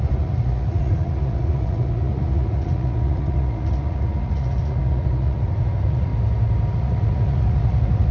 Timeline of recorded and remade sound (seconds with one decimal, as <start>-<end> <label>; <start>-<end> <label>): 0.0-6.1 remade; 6.1-6.7 recorded; 6.7-8.1 remade